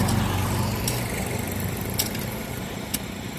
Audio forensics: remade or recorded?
recorded